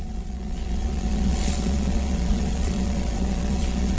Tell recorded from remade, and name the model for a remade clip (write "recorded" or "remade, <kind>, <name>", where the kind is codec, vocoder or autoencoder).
remade, vocoder, Vocos